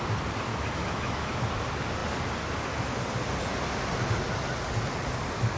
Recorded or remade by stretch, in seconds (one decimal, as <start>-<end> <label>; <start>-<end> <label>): 0.0-0.5 recorded; 0.5-1.4 remade; 1.4-5.6 recorded